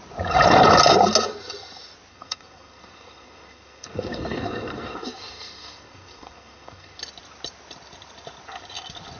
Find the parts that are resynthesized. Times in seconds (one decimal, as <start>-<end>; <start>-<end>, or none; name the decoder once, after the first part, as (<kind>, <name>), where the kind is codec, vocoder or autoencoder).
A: 2.1-7.0 (codec, SNAC)